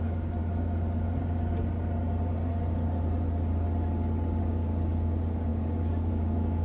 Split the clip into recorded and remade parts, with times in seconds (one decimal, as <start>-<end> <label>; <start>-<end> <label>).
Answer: 0.0-0.4 remade; 0.4-4.4 recorded; 4.4-6.6 remade